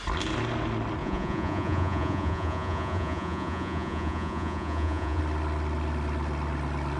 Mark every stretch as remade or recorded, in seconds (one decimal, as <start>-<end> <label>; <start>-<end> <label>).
0.0-1.0 recorded; 1.0-5.2 remade; 5.2-7.0 recorded